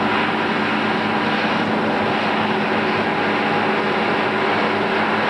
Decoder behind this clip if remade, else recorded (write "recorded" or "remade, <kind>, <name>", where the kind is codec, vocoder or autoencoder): recorded